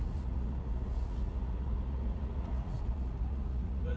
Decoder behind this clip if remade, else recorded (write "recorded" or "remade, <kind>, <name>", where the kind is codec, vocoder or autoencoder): remade, vocoder, Vocos